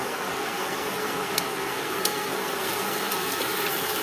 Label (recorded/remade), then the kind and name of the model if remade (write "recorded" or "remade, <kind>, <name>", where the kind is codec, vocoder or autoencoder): remade, codec, SNAC